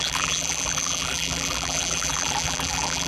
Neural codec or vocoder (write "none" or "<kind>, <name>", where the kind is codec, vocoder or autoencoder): vocoder, BigVGAN v2